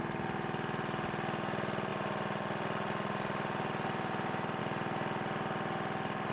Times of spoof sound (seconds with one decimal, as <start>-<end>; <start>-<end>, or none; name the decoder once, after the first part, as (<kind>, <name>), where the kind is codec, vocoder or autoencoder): none